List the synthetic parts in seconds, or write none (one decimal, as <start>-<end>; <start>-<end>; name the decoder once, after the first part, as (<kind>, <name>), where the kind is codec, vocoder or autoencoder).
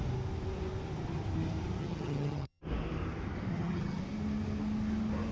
1.8-2.6 (vocoder, HiFi-GAN); 3.5-4.0